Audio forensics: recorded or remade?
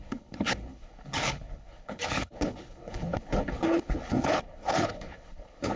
remade